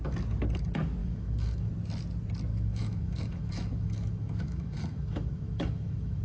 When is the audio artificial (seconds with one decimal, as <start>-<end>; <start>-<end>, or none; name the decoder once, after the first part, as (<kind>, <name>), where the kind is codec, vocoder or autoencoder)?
1.0-1.7 (autoencoder, DAC-VAE); 2.5-6.2